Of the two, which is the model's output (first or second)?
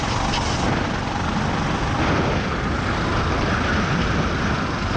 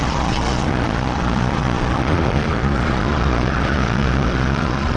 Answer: second